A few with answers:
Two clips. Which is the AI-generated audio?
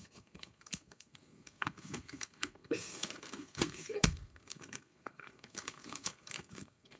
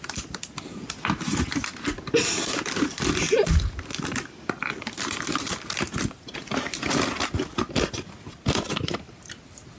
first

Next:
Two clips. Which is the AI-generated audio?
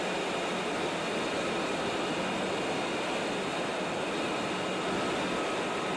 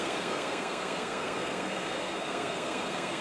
second